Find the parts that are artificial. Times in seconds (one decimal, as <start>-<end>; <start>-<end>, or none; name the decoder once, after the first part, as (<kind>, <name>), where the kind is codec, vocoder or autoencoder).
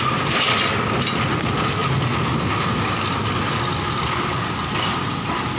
none